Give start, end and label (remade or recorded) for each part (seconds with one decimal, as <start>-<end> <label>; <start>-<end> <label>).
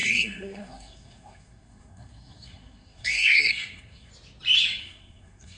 0.0-4.1 remade; 4.1-4.8 recorded; 4.8-5.6 remade